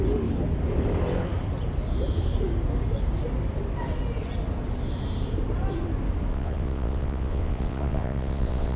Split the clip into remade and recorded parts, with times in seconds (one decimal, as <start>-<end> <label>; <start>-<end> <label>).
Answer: 0.0-6.3 recorded; 6.3-8.8 remade